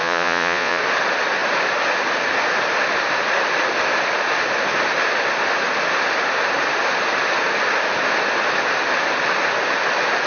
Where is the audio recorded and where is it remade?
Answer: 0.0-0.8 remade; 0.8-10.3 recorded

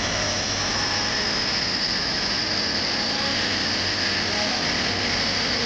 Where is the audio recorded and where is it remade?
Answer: 0.0-0.7 remade; 0.7-2.0 recorded; 2.0-2.4 remade; 2.4-5.7 recorded

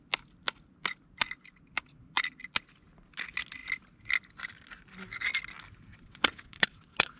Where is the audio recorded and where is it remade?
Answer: 0.0-5.9 recorded; 5.9-7.2 remade

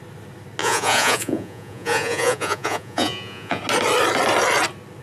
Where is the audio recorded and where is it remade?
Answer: 0.0-0.6 recorded; 0.6-3.6 remade; 3.6-5.0 recorded

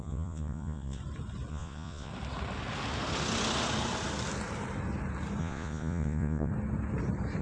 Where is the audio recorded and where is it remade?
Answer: 0.0-1.0 remade; 1.0-1.5 recorded; 1.5-2.1 remade; 2.1-5.4 recorded; 5.4-6.5 remade; 6.5-7.4 recorded